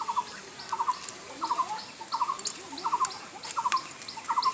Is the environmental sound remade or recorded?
recorded